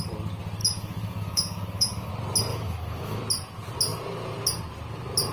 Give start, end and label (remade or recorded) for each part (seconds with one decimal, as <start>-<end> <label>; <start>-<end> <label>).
0.0-0.6 recorded; 0.6-2.1 remade; 2.1-2.5 recorded; 2.5-3.2 remade; 3.2-5.3 recorded